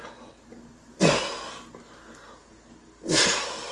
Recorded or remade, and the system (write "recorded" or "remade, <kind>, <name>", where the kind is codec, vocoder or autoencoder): recorded